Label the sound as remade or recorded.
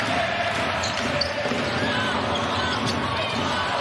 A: recorded